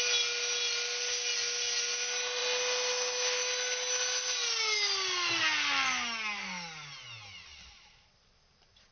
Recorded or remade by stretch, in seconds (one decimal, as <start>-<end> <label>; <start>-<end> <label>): 0.0-8.9 recorded